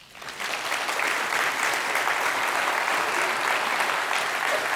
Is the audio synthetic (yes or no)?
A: no